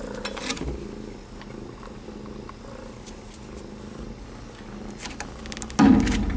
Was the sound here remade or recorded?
recorded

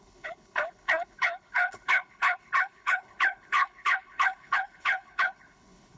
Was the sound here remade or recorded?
remade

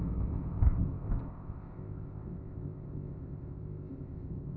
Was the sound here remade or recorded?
remade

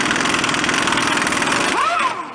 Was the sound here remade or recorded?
recorded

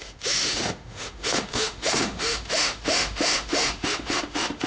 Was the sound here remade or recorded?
remade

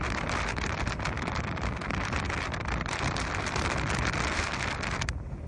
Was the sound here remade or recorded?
remade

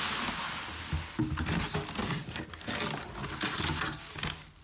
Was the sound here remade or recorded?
recorded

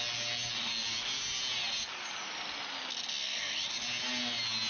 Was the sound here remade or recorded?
recorded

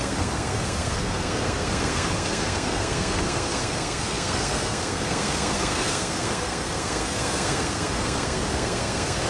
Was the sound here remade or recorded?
remade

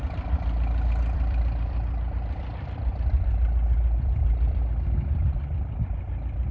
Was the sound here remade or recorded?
remade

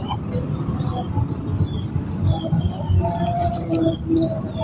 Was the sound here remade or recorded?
recorded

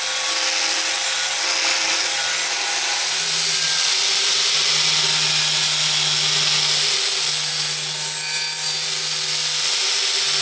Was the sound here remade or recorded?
recorded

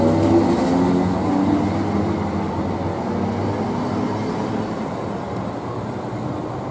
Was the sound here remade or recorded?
recorded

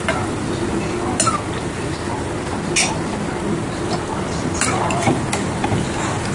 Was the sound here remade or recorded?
recorded